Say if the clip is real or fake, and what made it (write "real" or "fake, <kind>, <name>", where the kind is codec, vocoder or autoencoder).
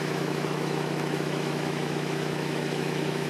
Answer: fake, autoencoder, DAC-VAE